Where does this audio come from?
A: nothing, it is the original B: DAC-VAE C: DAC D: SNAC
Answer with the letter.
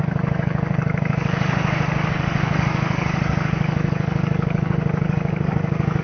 C